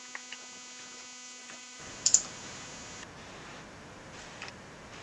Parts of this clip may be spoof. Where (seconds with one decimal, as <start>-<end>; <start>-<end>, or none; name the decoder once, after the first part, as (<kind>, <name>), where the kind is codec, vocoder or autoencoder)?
1.4-1.9 (vocoder, Vocos)